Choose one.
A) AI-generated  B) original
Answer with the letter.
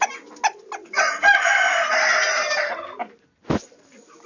B